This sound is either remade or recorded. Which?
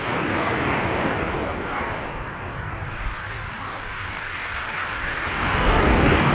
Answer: remade